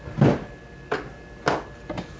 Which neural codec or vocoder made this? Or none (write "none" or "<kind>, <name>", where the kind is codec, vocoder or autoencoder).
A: none